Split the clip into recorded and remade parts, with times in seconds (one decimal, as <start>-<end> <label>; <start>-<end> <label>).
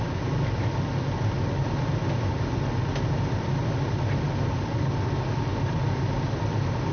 0.0-6.9 recorded